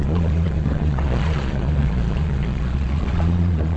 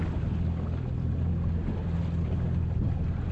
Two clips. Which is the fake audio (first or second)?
first